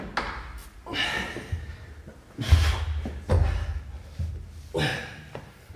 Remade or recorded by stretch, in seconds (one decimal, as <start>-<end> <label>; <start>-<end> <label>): 0.0-4.9 recorded; 4.9-5.8 remade